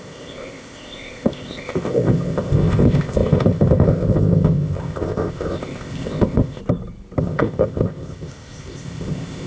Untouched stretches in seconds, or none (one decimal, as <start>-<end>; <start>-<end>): 6.6-7.2